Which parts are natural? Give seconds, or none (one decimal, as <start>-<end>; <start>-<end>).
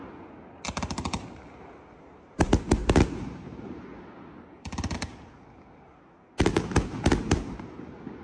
0.0-8.2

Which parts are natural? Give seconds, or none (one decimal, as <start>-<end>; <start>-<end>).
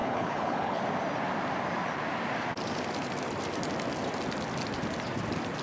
0.8-5.6